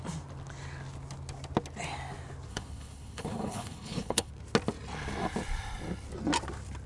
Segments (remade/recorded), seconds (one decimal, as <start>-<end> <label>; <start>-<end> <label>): 0.0-2.5 recorded; 2.5-4.3 remade; 4.3-6.9 recorded